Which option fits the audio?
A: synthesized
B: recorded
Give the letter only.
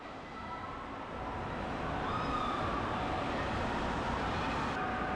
B